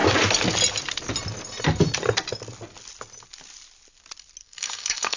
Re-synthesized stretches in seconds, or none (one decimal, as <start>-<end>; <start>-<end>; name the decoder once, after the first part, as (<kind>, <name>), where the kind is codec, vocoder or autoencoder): 4.4-5.2 (codec, SNAC)